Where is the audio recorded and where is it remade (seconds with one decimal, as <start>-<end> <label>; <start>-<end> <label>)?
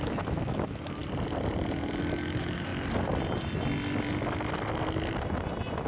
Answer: 0.0-1.0 remade; 1.0-2.0 recorded; 2.0-2.7 remade; 2.7-5.9 recorded